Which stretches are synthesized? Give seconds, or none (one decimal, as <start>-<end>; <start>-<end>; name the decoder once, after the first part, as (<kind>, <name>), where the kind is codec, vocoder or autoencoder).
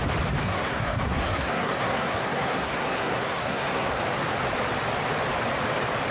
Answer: 0.4-3.9 (codec, SNAC)